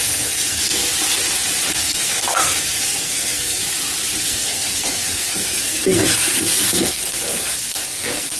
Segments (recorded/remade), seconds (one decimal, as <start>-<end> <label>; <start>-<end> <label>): 0.0-0.8 remade; 0.8-1.7 recorded; 1.7-3.6 remade; 3.6-4.2 recorded; 4.2-8.4 remade